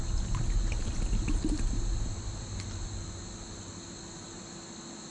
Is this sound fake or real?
real